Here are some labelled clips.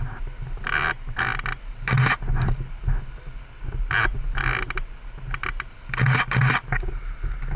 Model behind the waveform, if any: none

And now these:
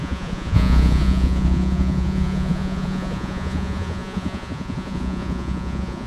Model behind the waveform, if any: vocoder, Vocos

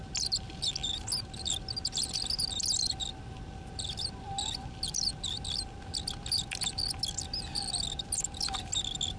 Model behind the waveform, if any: none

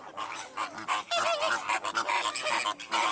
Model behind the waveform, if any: none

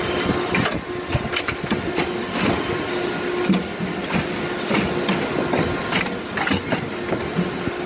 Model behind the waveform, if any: none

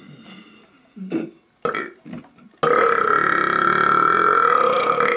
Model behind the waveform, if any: none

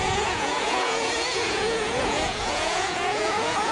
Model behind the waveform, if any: vocoder, Vocos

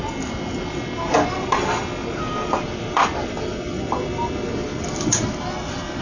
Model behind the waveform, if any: none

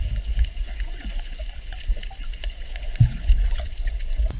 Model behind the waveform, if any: vocoder, Vocos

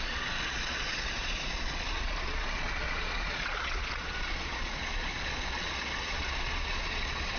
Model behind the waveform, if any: vocoder, Vocos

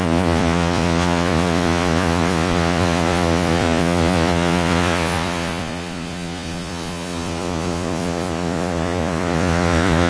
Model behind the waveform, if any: vocoder, Vocos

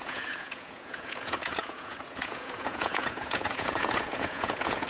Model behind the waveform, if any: vocoder, Vocos